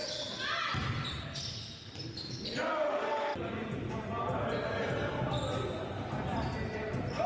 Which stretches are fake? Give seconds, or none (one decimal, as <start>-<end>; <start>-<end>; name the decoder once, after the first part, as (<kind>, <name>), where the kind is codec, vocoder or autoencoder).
none